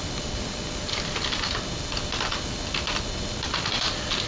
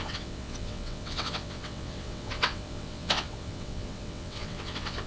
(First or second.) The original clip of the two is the first